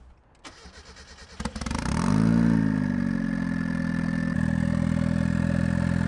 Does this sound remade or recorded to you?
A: recorded